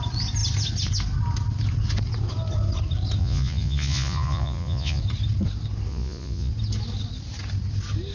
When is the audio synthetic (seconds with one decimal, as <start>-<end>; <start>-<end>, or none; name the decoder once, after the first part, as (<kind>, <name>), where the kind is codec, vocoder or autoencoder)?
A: 3.2-5.0 (vocoder, Vocos); 5.9-6.5

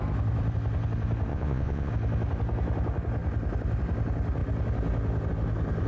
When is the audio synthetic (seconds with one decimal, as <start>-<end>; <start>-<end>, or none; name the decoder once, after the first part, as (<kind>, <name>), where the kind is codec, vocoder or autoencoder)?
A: 1.3-1.9 (vocoder, Vocos)

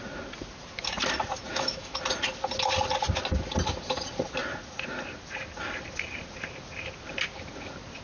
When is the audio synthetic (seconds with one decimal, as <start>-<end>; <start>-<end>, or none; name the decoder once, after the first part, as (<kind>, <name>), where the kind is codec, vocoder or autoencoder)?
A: 1.5-2.0 (autoencoder, DAC-VAE)

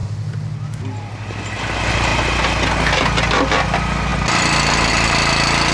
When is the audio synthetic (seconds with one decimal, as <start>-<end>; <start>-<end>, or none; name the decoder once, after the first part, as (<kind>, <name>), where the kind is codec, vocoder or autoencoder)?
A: none

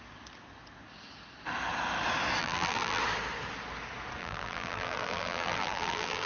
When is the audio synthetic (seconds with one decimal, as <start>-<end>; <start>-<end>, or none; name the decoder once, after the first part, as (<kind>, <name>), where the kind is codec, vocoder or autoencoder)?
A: 2.4-3.0 (vocoder, BigVGAN v2); 4.2-6.3

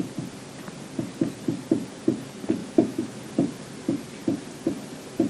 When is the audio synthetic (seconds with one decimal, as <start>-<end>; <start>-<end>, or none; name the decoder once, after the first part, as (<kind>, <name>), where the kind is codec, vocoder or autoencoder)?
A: 2.6-3.2 (autoencoder, DAC-VAE)

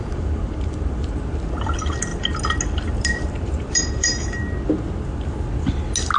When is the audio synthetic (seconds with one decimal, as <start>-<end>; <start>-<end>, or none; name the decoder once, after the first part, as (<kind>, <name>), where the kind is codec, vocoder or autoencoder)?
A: 0.0-2.1 (vocoder, BigVGAN v2); 2.9-4.1